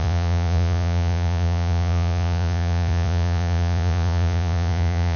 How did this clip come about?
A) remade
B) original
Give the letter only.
A